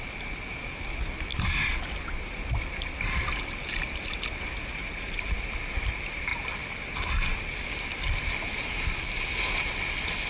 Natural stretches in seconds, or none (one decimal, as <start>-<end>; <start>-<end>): 0.0-10.3